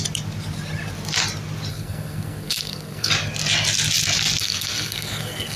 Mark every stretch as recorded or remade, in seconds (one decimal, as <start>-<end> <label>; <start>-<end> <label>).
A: 0.0-1.7 recorded; 1.7-3.1 remade; 3.1-4.4 recorded; 4.4-5.6 remade

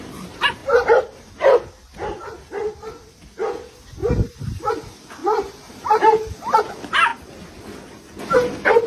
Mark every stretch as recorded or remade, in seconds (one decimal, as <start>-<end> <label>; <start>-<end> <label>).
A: 0.0-0.6 recorded; 0.6-1.3 remade; 1.3-4.0 recorded; 4.0-4.7 remade; 4.7-5.2 recorded; 5.2-6.3 remade; 6.3-8.9 recorded

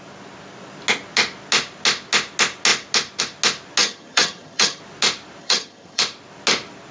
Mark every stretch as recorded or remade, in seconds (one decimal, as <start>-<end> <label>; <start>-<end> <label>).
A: 0.0-3.8 recorded; 3.8-4.8 remade; 4.8-5.4 recorded; 5.4-6.0 remade; 6.0-6.9 recorded